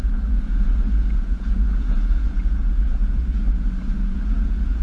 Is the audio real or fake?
fake